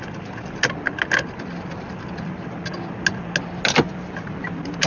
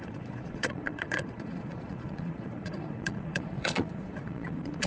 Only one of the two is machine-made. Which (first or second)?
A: second